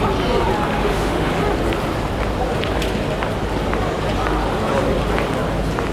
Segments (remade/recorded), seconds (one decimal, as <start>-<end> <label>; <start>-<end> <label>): 0.0-0.7 recorded; 0.7-1.3 remade; 1.3-5.9 recorded